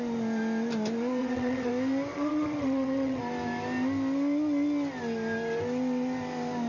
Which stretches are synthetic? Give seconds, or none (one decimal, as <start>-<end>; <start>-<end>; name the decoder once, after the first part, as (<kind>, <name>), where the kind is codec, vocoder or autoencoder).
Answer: 1.2-1.7 (vocoder, WaveNeXt); 2.1-3.2

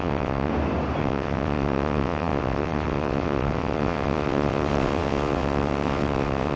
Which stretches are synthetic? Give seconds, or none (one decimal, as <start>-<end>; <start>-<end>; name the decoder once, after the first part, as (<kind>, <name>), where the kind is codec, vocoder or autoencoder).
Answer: 0.0-0.5 (vocoder, WaveNeXt); 1.0-6.6

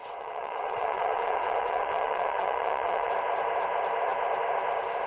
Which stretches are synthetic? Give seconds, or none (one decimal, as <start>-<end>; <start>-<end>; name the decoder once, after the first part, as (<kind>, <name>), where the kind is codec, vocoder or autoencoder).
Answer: 0.0-3.1 (vocoder, WaveNeXt)

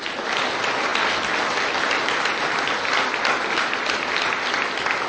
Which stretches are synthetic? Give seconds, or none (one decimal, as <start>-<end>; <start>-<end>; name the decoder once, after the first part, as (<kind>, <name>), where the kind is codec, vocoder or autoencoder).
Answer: none